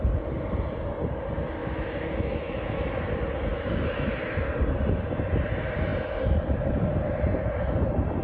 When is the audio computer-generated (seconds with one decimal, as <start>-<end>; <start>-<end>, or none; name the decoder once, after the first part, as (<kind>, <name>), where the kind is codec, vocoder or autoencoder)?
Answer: 1.6-2.9 (autoencoder, DAC-VAE); 3.5-4.1